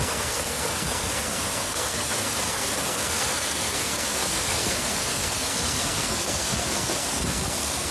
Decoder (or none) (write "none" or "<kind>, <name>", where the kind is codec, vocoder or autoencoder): codec, SNAC